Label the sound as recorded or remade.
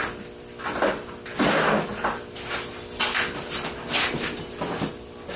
recorded